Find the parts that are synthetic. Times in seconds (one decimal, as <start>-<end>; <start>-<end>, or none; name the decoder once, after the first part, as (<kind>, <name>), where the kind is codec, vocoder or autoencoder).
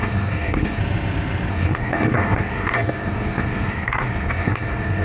0.0-0.8 (codec, SNAC); 1.5-5.0